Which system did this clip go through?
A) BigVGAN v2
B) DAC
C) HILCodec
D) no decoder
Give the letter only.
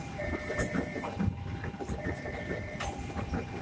A